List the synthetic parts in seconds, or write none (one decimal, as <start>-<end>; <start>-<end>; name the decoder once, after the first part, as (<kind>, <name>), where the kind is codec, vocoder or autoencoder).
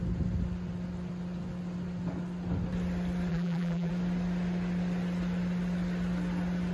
3.3-3.9 (vocoder, BigVGAN v2)